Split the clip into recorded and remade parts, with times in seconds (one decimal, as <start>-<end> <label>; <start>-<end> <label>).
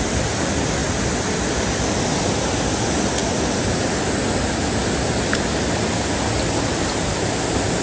0.0-7.8 recorded